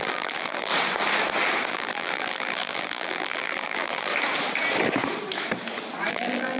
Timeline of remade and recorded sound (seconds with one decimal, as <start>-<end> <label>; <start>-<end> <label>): 0.0-0.7 remade; 0.7-1.7 recorded; 1.7-4.1 remade; 4.1-6.1 recorded; 6.1-6.6 remade